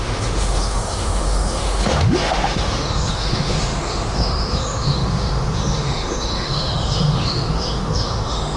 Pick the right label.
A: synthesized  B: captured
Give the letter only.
A